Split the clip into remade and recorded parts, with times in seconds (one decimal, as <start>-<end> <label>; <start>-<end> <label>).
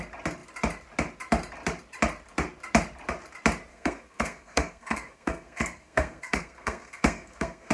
0.0-3.7 recorded; 3.7-7.7 remade